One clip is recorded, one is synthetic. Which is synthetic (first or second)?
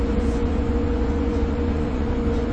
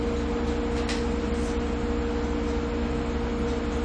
first